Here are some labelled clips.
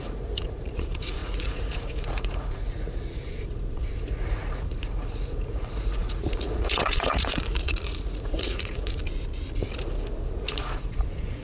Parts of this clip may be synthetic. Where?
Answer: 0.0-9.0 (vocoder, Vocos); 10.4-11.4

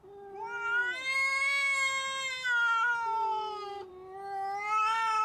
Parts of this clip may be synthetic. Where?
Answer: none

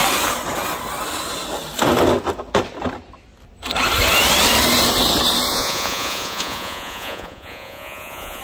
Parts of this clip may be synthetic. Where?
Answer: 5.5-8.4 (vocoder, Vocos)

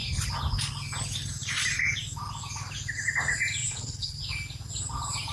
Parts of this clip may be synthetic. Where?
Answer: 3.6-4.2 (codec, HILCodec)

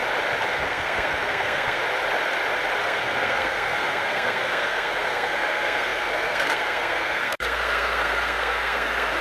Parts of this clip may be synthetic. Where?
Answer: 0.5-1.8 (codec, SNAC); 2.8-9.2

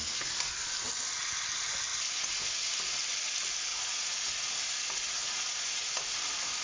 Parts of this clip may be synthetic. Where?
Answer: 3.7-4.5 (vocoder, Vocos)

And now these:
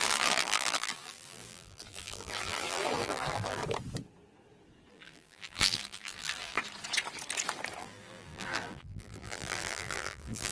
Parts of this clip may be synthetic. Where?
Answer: 0.0-3.6 (vocoder, BigVGAN v2); 4.9-6.6; 7.8-10.5

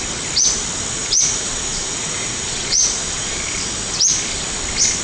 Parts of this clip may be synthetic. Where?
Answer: 1.0-3.3 (vocoder, Vocos)